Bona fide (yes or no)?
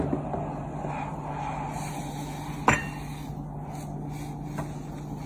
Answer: yes